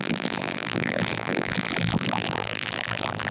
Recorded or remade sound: remade